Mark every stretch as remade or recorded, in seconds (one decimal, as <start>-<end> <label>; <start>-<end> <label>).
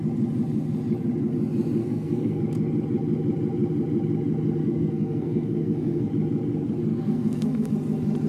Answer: 0.0-1.8 recorded; 1.8-2.4 remade; 2.4-4.6 recorded; 4.6-6.1 remade; 6.1-6.9 recorded; 6.9-7.7 remade; 7.7-8.3 recorded